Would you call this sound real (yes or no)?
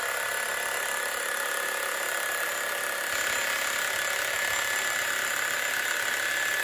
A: yes